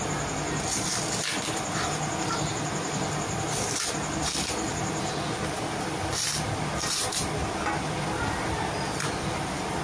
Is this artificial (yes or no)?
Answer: no